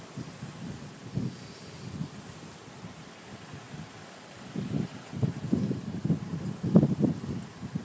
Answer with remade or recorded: recorded